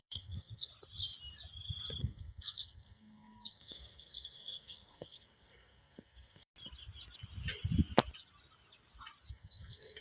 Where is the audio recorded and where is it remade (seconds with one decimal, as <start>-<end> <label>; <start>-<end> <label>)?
0.0-0.7 remade; 0.7-2.0 recorded; 2.0-6.5 remade; 6.5-9.3 recorded; 9.3-10.0 remade